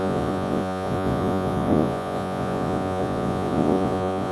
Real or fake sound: fake